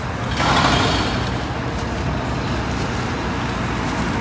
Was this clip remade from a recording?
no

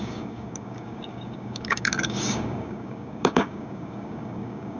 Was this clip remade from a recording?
yes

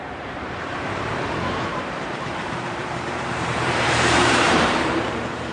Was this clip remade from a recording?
yes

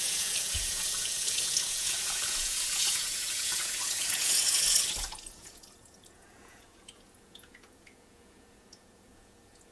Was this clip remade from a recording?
yes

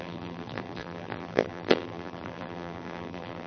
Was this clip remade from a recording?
yes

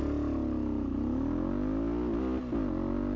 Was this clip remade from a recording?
no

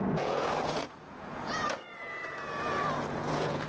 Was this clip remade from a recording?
yes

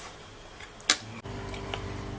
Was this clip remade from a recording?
no